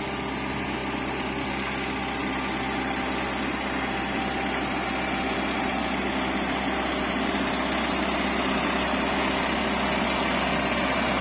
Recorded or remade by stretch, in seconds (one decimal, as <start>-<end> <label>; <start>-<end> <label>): 0.0-11.2 recorded